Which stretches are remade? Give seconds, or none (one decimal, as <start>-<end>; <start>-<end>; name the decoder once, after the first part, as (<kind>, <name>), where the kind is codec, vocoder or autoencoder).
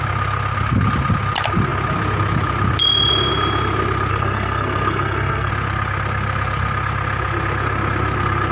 4.1-5.5 (codec, SNAC)